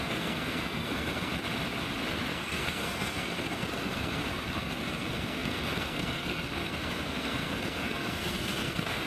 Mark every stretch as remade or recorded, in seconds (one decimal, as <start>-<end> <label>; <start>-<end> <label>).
0.0-1.3 remade; 1.3-2.1 recorded; 2.1-9.1 remade

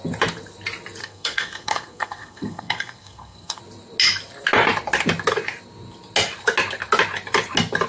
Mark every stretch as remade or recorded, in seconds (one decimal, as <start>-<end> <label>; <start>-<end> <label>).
0.0-1.0 recorded; 1.0-3.6 remade; 3.6-7.9 recorded

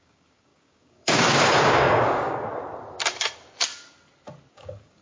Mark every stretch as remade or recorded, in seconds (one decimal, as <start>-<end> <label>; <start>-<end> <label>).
0.0-2.5 remade; 2.5-4.5 recorded; 4.5-5.0 remade

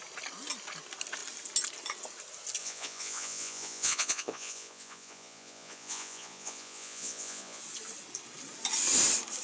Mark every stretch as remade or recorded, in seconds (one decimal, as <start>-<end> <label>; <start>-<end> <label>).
0.0-2.6 recorded; 2.6-7.6 remade; 7.6-9.4 recorded

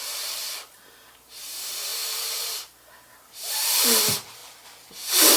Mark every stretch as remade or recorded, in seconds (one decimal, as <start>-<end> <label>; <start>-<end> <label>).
0.0-4.4 remade; 4.4-5.4 recorded